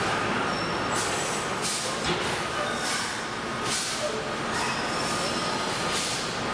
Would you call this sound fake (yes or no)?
no